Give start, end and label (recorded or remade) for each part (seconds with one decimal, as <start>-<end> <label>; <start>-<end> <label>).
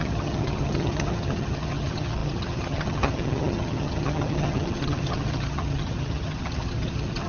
0.0-7.3 remade